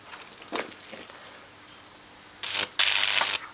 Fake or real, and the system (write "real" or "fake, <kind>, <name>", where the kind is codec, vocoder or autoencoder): real